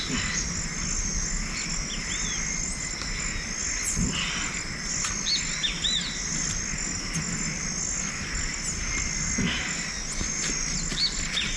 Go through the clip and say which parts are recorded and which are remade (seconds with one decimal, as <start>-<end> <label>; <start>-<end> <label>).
0.0-11.6 recorded